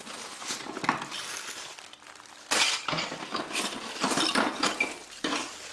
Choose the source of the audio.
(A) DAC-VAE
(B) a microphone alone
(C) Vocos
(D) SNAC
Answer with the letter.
B